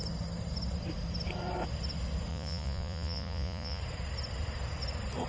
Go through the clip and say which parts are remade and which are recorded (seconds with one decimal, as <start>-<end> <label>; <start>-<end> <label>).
0.0-2.3 recorded; 2.3-3.8 remade; 3.8-5.3 recorded